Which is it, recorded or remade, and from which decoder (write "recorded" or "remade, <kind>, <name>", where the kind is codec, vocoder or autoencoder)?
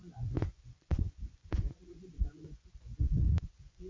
remade, vocoder, Vocos